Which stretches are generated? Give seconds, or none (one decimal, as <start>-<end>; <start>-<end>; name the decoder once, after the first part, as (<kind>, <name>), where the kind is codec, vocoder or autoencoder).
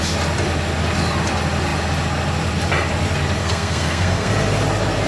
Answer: 3.4-4.3 (codec, SNAC)